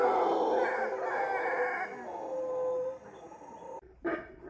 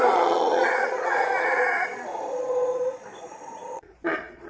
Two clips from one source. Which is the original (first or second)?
first